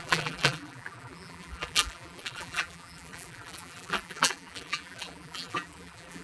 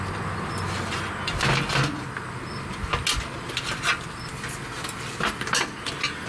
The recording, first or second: second